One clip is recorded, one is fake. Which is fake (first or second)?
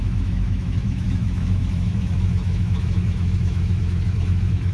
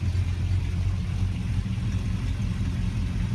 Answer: first